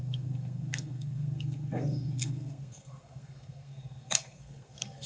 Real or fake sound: fake